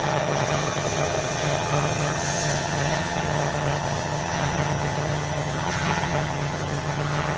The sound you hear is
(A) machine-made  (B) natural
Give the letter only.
A